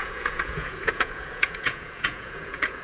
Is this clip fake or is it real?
fake